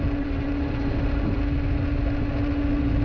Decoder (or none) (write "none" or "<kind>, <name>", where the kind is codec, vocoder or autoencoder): none